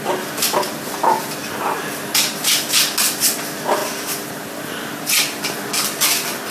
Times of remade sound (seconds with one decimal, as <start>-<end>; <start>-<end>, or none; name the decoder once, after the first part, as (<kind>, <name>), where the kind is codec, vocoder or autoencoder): 1.4-2.6 (vocoder, BigVGAN v2); 3.8-5.0